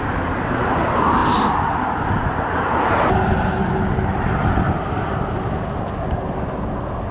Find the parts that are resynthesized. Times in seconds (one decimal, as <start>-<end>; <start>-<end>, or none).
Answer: none